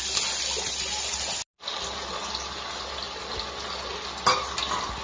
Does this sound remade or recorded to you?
recorded